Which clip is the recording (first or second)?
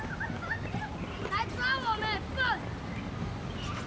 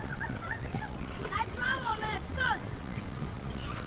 first